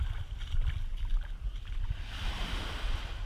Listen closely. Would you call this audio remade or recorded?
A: recorded